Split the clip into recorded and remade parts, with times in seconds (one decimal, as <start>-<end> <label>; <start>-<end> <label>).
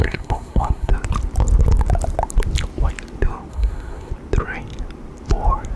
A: 0.0-0.9 remade; 0.9-3.5 recorded; 3.5-4.1 remade; 4.1-5.8 recorded